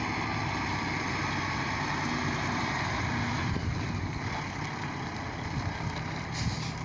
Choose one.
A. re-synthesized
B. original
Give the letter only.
B